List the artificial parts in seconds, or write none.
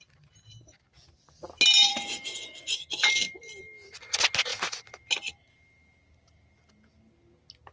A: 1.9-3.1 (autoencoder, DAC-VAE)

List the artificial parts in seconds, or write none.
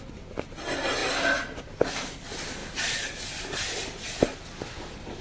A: none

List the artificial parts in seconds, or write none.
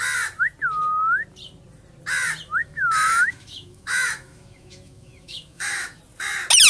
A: 2.6-6.0 (autoencoder, DAC-VAE)